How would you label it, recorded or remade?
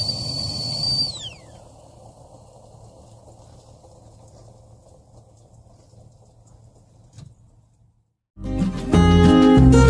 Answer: recorded